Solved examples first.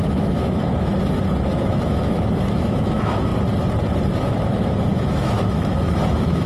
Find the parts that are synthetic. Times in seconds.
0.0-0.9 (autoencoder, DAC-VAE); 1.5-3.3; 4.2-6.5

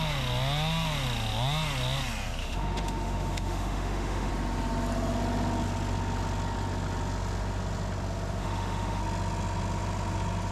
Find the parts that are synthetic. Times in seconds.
2.4-4.3 (autoencoder, DAC-VAE); 8.4-9.0